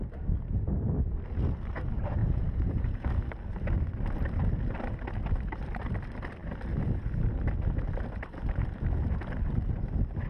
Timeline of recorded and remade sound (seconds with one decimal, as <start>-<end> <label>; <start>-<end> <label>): 0.0-2.2 recorded; 2.2-3.1 remade; 3.1-10.3 recorded